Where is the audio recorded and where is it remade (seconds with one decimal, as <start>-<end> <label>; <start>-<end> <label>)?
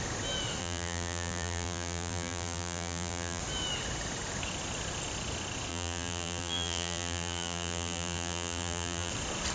0.0-0.6 recorded; 0.6-3.4 remade; 3.4-5.7 recorded; 5.7-9.1 remade; 9.1-9.5 recorded